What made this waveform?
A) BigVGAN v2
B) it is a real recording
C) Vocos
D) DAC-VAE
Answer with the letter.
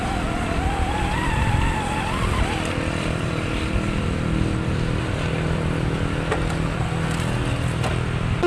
B